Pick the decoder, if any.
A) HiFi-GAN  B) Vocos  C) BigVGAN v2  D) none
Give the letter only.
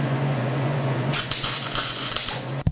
B